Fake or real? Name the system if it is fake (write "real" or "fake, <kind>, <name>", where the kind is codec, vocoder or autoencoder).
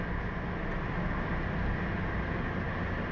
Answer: real